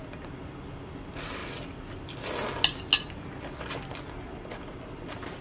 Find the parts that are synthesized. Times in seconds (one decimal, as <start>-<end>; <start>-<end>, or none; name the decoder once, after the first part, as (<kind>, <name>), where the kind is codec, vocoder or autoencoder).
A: none